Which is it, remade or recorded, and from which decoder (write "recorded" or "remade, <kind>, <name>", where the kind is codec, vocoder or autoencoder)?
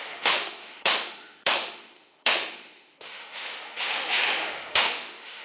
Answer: remade, autoencoder, DAC-VAE